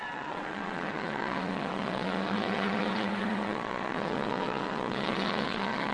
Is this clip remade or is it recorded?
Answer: remade